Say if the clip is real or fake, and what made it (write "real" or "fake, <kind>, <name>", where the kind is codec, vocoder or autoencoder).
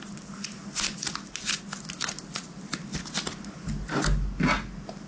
real